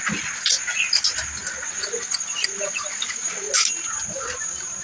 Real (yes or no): yes